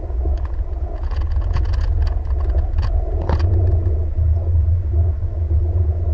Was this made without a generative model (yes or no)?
no